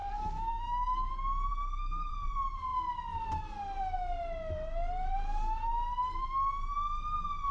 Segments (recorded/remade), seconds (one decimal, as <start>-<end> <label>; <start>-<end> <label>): 0.0-1.1 remade; 1.1-1.5 recorded; 1.5-2.1 remade; 2.1-7.5 recorded